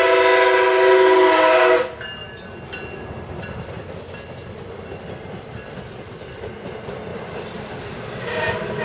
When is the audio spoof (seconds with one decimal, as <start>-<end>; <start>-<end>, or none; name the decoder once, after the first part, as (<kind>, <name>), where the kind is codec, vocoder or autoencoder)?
none